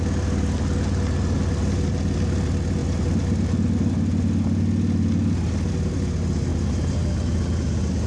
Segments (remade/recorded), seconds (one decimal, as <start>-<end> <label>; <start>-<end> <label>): 0.0-8.1 recorded

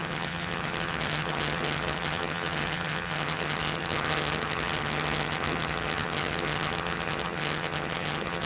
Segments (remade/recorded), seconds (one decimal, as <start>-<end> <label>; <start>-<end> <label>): 0.0-8.5 remade

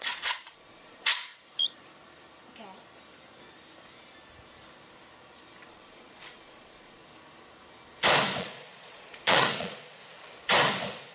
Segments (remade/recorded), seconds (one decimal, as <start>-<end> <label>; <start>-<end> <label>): 0.0-1.3 remade; 1.3-5.7 recorded; 5.7-7.0 remade; 7.0-8.4 recorded; 8.4-10.0 remade; 10.0-11.1 recorded

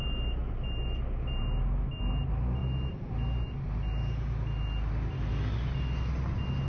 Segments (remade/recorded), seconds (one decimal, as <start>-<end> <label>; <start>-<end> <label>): 0.0-6.7 recorded